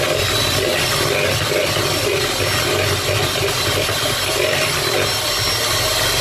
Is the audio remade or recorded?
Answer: recorded